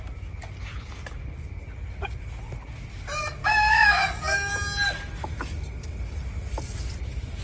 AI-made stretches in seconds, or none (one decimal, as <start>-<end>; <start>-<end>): 3.4-4.5